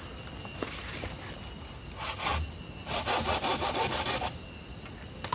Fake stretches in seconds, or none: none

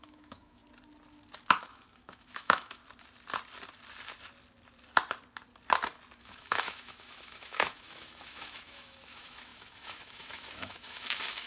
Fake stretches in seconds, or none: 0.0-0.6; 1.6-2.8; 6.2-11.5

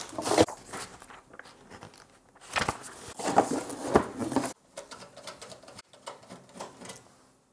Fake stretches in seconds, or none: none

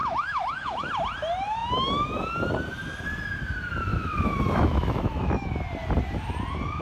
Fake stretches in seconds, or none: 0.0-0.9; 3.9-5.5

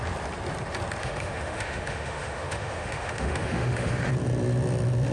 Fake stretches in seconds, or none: 1.0-4.1